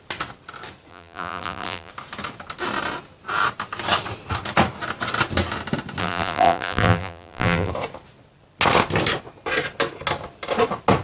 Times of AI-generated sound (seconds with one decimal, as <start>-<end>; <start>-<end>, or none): 0.9-1.9; 6.0-7.7